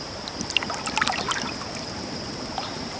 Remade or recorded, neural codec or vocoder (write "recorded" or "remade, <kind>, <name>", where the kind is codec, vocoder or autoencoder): recorded